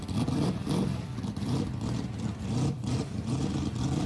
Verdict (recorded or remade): remade